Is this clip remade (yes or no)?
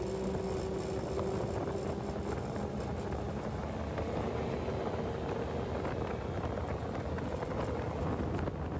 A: no